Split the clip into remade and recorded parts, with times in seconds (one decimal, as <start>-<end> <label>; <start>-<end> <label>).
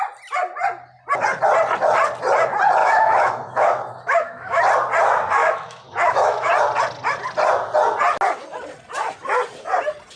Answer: 0.0-2.8 recorded; 2.8-4.6 remade; 4.6-5.4 recorded; 5.4-6.5 remade; 6.5-10.2 recorded